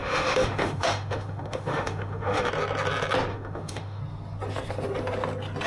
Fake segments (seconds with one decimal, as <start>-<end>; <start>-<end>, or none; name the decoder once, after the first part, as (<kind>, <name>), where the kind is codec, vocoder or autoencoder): 0.0-2.5 (autoencoder, DAC-VAE); 3.3-4.0